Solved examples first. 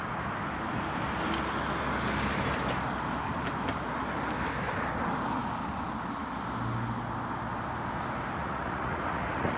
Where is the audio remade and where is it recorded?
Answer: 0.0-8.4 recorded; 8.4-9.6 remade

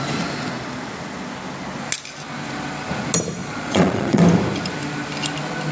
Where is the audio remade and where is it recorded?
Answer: 0.0-3.4 recorded; 3.4-4.2 remade; 4.2-5.7 recorded

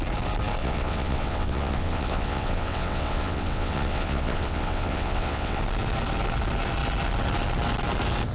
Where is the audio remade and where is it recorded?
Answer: 0.0-0.6 recorded; 0.6-5.6 remade; 5.6-8.3 recorded

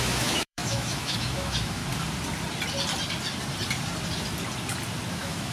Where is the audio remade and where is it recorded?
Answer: 0.0-1.8 remade; 1.8-5.1 recorded; 5.1-5.5 remade

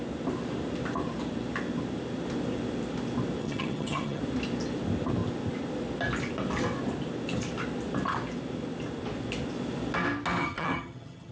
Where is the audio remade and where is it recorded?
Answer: 0.0-3.4 recorded; 3.4-4.2 remade; 4.2-10.4 recorded; 10.4-11.3 remade